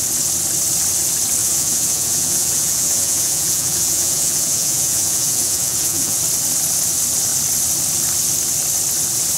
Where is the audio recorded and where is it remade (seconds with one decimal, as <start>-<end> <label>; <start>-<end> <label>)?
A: 0.0-1.4 recorded; 1.4-6.2 remade; 6.2-9.4 recorded

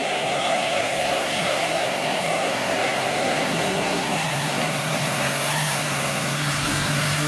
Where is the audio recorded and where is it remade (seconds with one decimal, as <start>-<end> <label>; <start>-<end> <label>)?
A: 0.0-7.3 remade

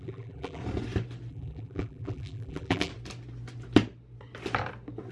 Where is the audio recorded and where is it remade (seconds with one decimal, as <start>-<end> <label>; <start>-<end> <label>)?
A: 0.0-0.6 remade; 0.6-1.3 recorded; 1.3-2.9 remade; 2.9-5.1 recorded

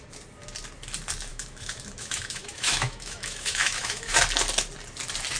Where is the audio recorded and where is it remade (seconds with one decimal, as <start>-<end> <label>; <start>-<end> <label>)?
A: 0.0-1.3 recorded; 1.3-4.2 remade; 4.2-5.4 recorded

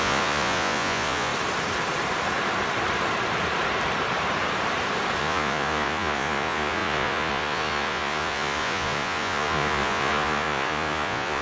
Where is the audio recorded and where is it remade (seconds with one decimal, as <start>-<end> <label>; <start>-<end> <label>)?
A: 0.0-1.3 remade; 1.3-5.2 recorded; 5.2-11.4 remade

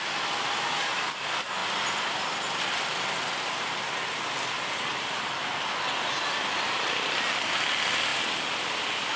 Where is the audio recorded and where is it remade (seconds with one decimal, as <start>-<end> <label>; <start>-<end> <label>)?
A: 0.0-9.2 recorded

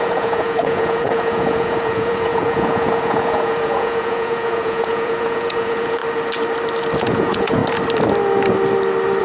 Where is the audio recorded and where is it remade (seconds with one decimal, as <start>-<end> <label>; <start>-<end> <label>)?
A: 0.0-6.0 remade; 6.0-7.1 recorded; 7.1-7.6 remade; 7.6-9.2 recorded